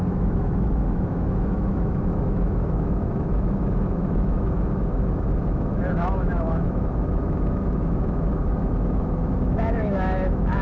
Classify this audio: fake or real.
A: fake